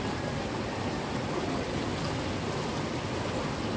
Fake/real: real